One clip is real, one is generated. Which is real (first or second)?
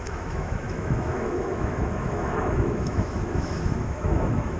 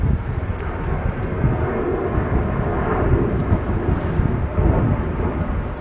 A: second